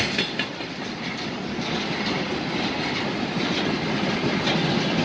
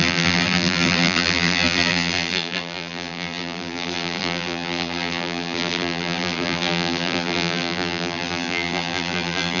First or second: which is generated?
second